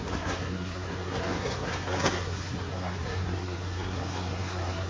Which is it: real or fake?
fake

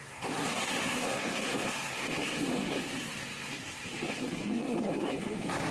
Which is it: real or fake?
fake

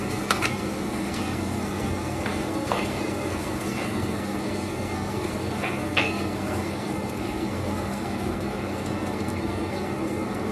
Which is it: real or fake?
fake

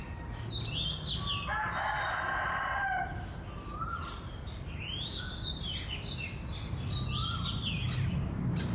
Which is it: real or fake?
real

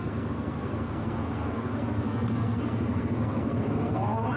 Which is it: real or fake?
fake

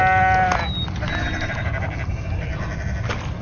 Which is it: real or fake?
real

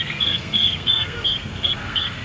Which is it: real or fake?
fake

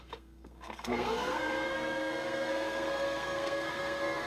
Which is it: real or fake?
fake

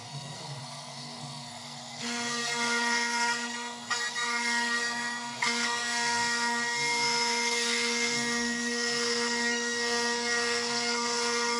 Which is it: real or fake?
fake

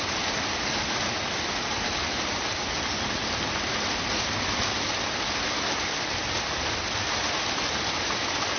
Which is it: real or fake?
real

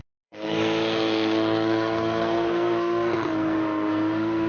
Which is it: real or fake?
fake